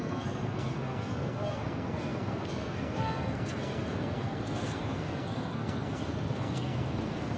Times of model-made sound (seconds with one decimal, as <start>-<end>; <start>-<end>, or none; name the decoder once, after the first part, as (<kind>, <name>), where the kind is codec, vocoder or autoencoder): 0.0-7.4 (codec, SNAC)